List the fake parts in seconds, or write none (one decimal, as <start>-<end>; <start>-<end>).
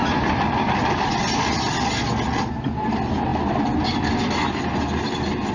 none